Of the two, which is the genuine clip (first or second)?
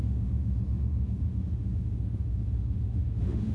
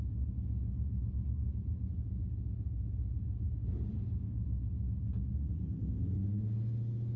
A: second